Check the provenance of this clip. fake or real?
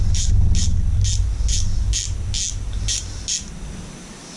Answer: real